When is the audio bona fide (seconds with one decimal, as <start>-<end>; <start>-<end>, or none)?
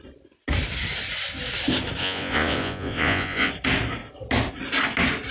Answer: 0.0-2.0; 3.5-5.3